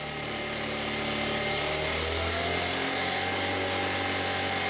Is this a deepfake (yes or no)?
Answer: no